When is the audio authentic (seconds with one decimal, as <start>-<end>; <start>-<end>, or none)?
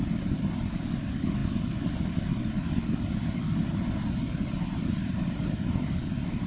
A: 0.0-6.5